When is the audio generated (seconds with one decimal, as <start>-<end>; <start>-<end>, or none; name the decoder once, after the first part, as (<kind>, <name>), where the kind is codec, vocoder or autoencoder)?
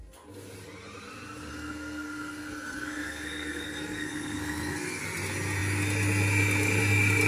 1.5-5.0 (codec, SNAC)